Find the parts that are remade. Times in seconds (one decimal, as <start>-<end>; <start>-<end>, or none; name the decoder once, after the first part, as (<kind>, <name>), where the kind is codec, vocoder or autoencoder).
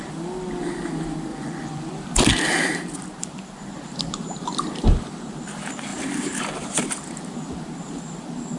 1.3-1.9 (vocoder, Vocos)